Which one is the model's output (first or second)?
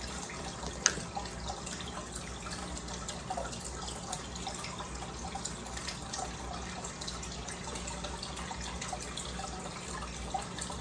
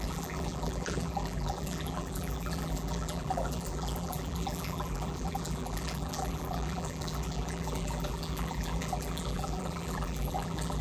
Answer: second